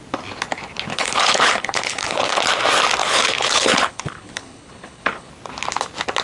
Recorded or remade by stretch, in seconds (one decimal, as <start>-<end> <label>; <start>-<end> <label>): 0.0-0.9 recorded; 0.9-2.4 remade; 2.4-3.0 recorded; 3.0-5.3 remade; 5.3-6.2 recorded

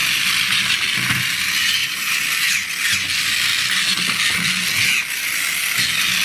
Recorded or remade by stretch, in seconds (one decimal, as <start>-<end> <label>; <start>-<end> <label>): 0.0-6.2 recorded

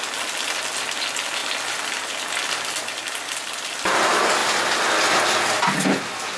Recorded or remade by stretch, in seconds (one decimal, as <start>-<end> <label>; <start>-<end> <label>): 0.0-6.4 recorded

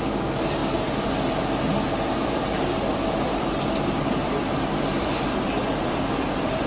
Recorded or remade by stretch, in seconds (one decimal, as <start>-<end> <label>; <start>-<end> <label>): 0.0-0.6 recorded; 0.6-4.4 remade; 4.4-5.8 recorded; 5.8-6.7 remade

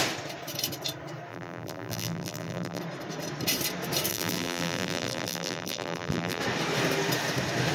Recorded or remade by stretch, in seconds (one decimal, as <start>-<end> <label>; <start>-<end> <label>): 0.0-1.3 recorded; 1.3-2.8 remade; 2.8-4.1 recorded; 4.1-6.4 remade; 6.4-7.7 recorded